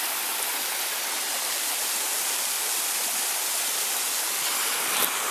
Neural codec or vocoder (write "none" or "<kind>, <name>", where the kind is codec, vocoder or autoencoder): none